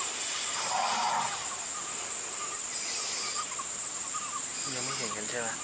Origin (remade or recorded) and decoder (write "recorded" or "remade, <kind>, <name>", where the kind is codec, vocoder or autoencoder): recorded